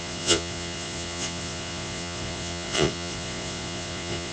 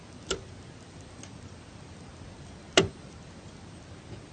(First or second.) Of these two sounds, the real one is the second